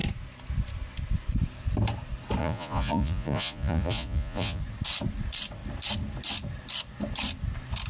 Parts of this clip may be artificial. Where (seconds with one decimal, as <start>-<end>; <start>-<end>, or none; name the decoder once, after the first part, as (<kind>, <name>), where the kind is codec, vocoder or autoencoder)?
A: 2.4-4.6 (vocoder, Vocos)